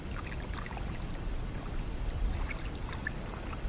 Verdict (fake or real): real